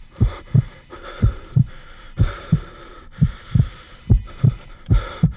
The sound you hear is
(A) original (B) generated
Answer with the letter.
B